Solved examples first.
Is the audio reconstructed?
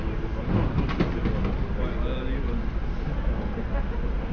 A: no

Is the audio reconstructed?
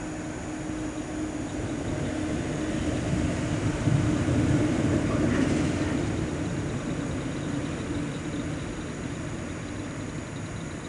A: no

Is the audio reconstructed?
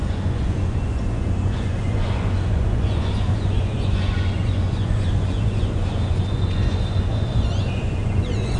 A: yes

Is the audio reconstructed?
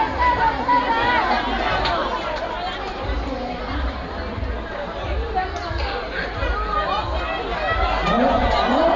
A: no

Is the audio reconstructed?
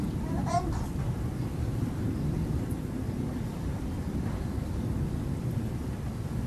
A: yes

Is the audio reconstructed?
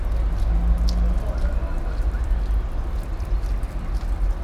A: no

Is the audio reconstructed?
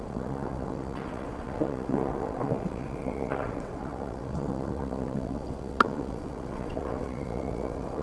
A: yes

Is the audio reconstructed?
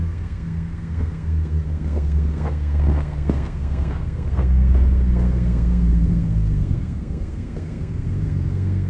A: yes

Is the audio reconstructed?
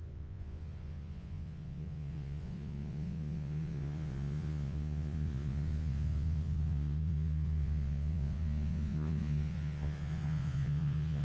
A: yes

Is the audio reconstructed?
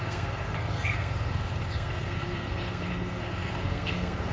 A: yes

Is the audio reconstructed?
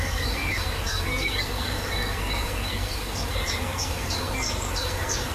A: yes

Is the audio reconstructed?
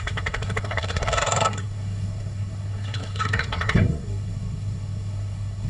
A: yes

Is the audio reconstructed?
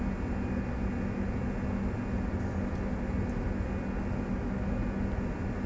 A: no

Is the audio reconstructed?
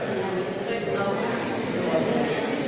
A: no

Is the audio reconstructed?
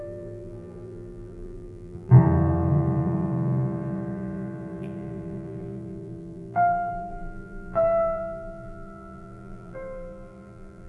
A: yes